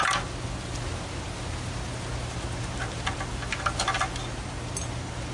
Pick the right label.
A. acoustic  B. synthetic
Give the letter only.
A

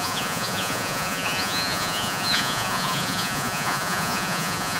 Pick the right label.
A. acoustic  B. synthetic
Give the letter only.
B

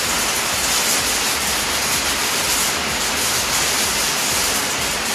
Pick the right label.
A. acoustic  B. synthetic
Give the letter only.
A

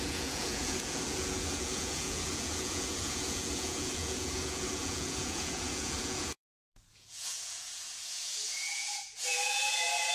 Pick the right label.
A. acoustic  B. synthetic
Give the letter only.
B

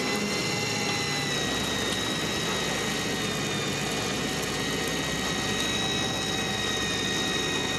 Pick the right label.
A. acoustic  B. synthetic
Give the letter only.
A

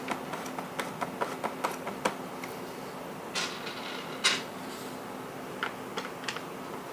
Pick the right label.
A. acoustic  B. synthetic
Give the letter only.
A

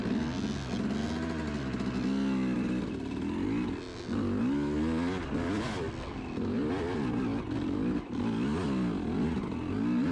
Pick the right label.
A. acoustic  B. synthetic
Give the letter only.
A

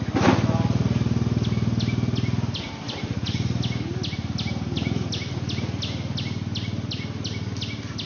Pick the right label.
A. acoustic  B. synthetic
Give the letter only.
A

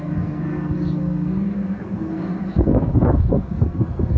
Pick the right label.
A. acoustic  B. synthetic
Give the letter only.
B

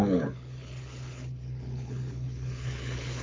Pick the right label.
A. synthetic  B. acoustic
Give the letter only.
A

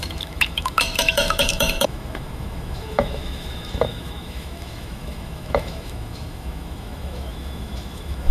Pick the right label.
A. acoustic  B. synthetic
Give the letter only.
B